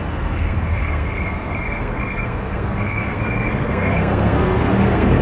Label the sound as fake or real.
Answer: fake